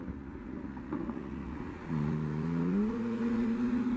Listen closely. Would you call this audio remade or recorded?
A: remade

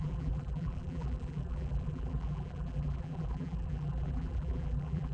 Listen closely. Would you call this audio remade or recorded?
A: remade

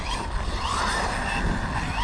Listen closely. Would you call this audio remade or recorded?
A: recorded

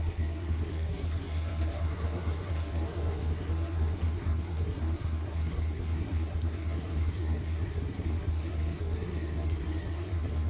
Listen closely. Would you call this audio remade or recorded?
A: remade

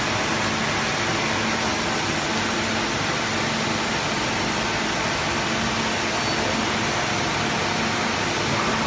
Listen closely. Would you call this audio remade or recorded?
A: recorded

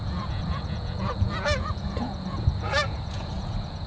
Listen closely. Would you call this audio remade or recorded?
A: remade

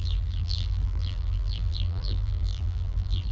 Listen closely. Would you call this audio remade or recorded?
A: remade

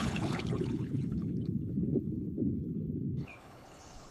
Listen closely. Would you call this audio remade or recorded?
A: remade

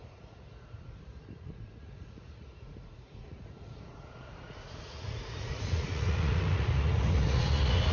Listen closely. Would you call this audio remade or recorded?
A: remade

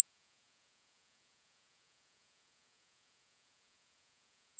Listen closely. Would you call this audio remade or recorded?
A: remade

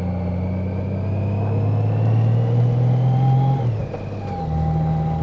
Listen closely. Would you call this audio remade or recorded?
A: recorded